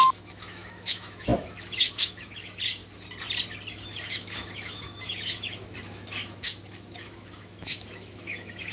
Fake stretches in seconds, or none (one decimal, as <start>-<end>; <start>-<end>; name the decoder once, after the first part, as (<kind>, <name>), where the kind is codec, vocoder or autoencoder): 0.0-2.8 (autoencoder, DAC-VAE); 3.7-8.7